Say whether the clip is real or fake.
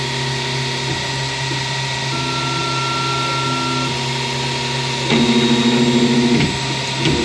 real